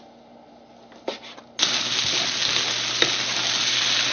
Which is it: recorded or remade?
recorded